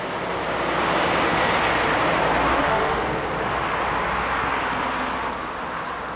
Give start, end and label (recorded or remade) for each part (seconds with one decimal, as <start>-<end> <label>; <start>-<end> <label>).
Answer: 0.0-2.5 recorded; 2.5-3.0 remade; 3.0-6.2 recorded

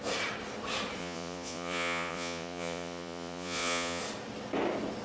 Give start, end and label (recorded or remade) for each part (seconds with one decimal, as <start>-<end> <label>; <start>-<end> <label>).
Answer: 0.0-1.0 recorded; 1.0-4.0 remade; 4.0-5.0 recorded

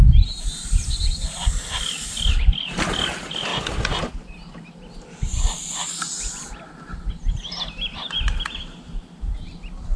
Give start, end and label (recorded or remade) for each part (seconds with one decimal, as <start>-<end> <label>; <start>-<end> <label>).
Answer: 0.0-3.5 remade; 3.5-4.1 recorded; 4.1-10.0 remade

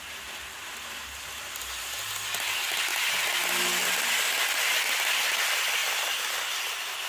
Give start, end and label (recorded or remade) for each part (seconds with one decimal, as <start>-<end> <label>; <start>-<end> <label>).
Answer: 0.0-7.1 recorded

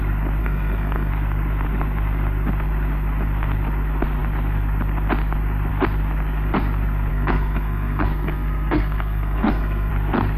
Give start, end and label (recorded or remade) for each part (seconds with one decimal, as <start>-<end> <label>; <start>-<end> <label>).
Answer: 0.0-0.4 recorded; 0.4-1.1 remade; 1.1-7.1 recorded; 7.1-9.9 remade; 9.9-10.4 recorded